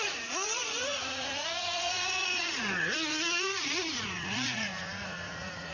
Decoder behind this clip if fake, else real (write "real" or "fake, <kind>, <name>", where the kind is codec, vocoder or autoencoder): fake, vocoder, Vocos